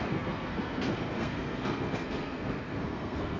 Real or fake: fake